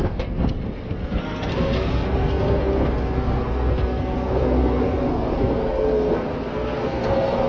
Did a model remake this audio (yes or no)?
yes